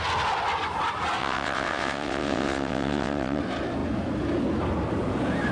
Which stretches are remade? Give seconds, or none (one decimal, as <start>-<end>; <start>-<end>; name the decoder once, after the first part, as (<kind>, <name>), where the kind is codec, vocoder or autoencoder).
1.2-3.4 (vocoder, WaveNeXt)